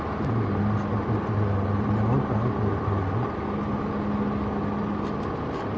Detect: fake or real real